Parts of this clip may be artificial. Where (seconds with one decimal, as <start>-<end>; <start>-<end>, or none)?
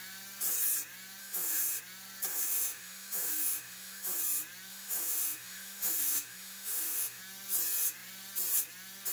1.2-1.8; 2.3-4.2; 4.7-7.2